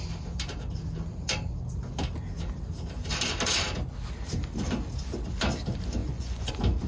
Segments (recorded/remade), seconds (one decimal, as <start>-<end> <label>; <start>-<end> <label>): 0.0-6.0 recorded; 6.0-6.5 remade; 6.5-6.9 recorded